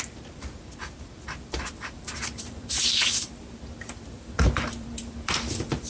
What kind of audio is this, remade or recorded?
remade